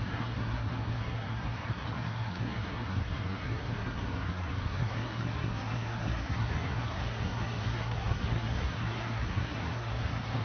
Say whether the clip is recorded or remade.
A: remade